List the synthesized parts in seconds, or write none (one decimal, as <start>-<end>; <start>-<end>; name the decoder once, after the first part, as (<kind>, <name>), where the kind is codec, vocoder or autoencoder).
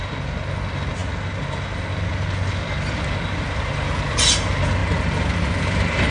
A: none